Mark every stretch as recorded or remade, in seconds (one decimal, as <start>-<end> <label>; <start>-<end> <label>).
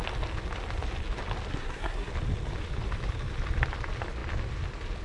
0.0-1.5 recorded; 1.5-2.1 remade; 2.1-5.0 recorded